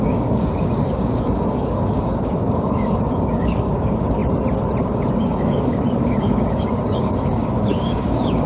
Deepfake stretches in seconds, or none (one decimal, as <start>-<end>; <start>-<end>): 0.0-4.2; 4.8-8.5